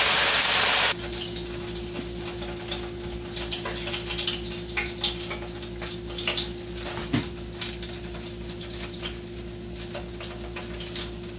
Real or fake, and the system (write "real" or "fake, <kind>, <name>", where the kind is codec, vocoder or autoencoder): real